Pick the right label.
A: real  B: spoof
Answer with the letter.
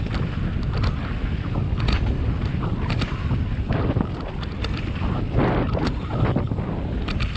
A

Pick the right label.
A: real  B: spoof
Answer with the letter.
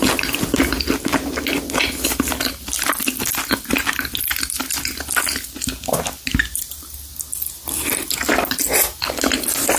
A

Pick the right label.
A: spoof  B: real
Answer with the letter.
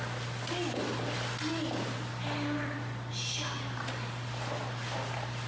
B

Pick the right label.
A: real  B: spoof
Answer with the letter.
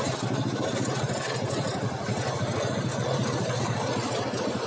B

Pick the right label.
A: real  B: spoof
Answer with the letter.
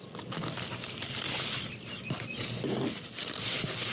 A